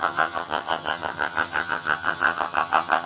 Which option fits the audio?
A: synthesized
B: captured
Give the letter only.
A